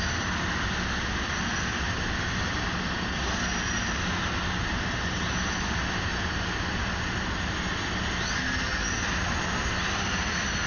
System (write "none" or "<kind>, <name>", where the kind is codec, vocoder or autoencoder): none